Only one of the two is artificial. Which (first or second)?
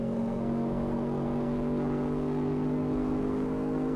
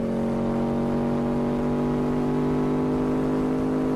first